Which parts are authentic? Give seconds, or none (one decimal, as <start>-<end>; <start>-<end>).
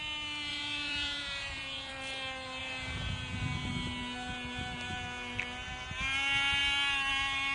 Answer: 0.0-0.5; 1.9-2.6; 3.7-7.5